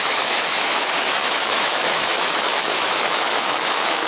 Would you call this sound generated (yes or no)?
yes